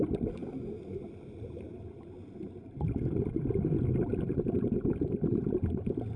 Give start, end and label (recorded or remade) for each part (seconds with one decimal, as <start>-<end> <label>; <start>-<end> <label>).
0.0-6.2 recorded